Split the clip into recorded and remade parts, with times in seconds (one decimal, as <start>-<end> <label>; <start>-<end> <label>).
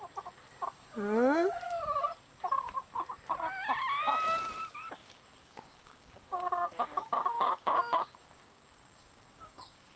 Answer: 0.0-5.0 recorded; 5.0-10.0 remade